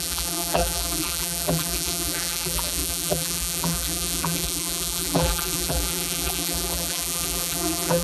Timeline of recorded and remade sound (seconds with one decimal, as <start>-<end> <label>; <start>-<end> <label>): 0.0-8.0 remade